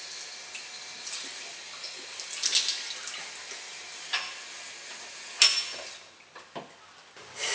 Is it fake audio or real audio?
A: real